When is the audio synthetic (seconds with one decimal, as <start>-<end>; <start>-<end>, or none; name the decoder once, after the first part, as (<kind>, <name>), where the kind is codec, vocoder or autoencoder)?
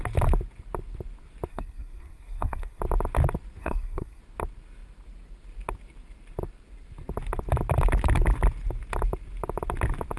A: 1.5-2.8 (codec, SNAC); 3.6-4.2